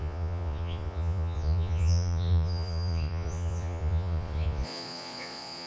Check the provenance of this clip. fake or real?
fake